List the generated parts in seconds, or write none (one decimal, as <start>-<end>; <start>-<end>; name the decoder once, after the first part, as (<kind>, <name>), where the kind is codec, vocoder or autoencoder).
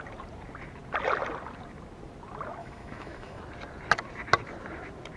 2.6-3.4 (autoencoder, DAC-VAE)